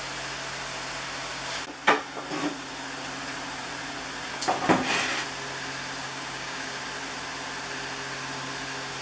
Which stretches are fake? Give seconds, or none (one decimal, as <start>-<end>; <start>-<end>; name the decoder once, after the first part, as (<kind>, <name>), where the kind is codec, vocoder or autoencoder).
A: 6.0-6.8 (codec, DAC)